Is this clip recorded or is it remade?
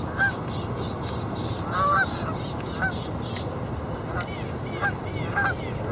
recorded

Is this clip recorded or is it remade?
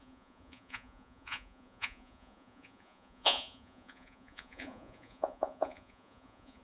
remade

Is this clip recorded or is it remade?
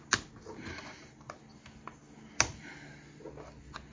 recorded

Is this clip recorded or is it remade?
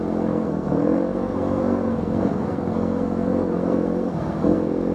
remade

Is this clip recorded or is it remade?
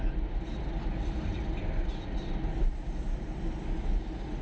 recorded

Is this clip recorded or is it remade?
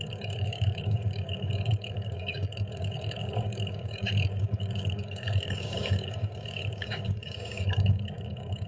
remade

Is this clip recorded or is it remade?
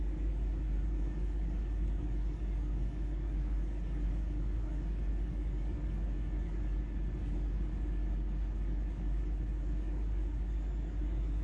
remade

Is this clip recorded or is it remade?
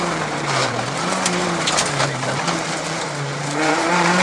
remade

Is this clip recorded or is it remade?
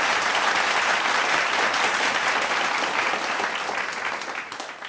recorded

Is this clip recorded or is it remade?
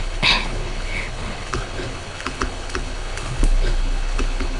remade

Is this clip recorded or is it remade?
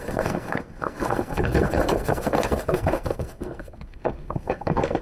remade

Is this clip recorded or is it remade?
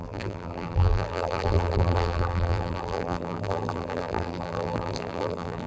remade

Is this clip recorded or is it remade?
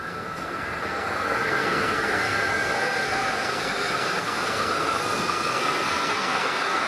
remade